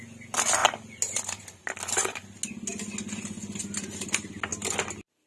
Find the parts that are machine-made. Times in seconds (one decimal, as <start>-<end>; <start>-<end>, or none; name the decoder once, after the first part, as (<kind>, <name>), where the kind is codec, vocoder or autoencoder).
none